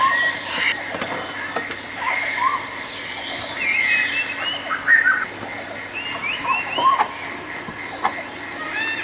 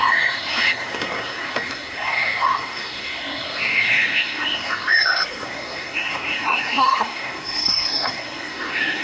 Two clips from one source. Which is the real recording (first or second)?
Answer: first